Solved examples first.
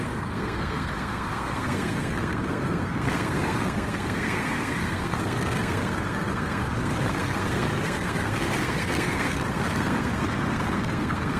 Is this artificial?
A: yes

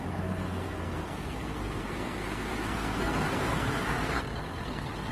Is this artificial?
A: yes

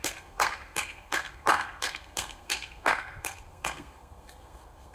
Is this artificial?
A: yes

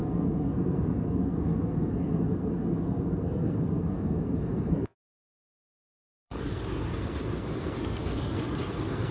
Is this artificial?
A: yes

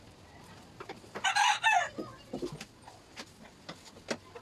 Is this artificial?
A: no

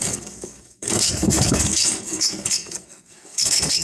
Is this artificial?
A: yes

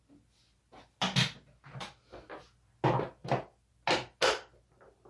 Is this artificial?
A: no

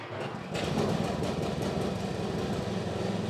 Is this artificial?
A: no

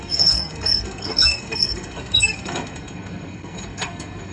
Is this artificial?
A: yes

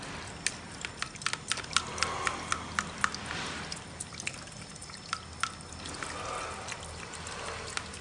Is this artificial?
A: no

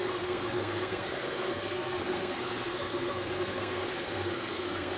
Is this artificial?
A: yes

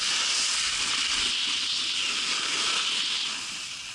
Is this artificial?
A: no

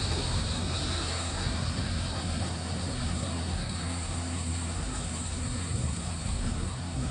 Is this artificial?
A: yes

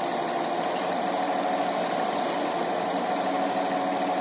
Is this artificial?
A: no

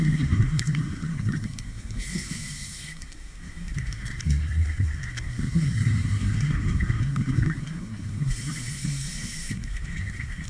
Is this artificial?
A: yes